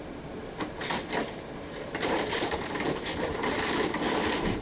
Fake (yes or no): yes